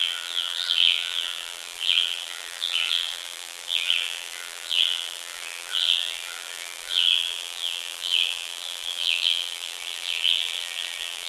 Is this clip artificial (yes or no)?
yes